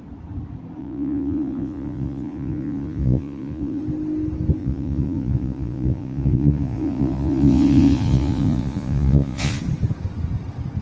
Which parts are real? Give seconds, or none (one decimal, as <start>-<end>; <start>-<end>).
0.0-0.8; 3.8-4.6; 9.6-10.8